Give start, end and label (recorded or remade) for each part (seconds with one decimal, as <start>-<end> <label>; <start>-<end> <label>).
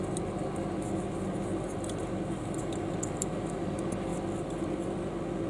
0.0-5.5 recorded